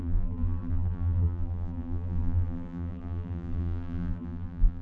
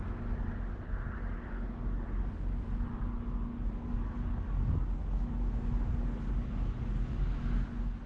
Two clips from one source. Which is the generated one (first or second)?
first